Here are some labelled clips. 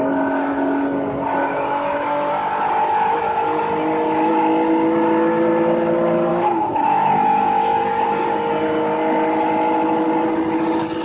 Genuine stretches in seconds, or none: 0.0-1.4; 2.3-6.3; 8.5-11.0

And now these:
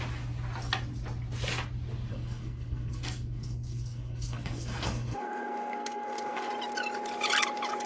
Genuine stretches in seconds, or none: 0.0-2.1; 6.5-7.9

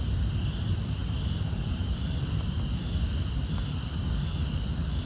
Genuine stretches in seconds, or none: 0.0-5.1

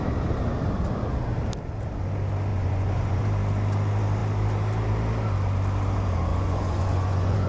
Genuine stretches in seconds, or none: 0.0-2.5; 3.2-6.3

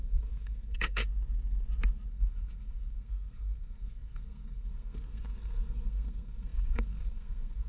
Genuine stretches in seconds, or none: 1.0-2.1